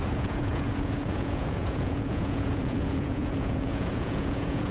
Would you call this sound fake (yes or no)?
yes